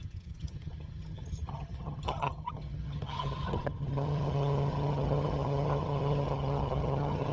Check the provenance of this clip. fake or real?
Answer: fake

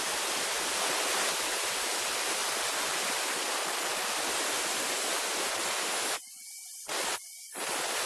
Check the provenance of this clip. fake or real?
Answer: real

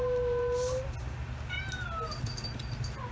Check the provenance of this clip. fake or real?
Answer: real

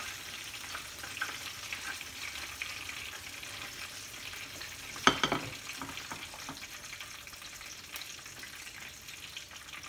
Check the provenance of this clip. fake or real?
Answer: real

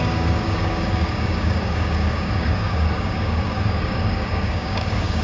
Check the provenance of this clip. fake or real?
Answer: fake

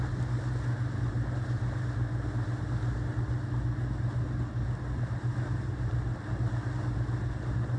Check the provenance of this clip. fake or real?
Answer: real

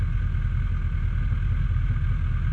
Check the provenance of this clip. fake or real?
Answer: real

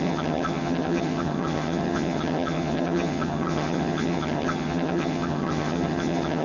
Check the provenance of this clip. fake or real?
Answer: fake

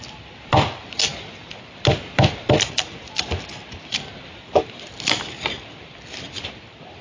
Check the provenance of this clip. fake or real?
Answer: real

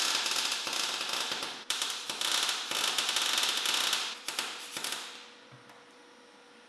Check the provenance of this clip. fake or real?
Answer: real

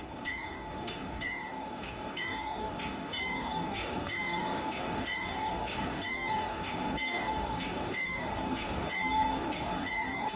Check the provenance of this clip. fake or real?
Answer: fake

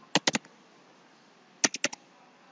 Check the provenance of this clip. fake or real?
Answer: real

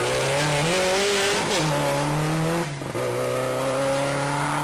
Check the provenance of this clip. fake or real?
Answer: real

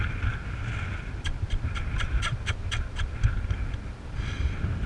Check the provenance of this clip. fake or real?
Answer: real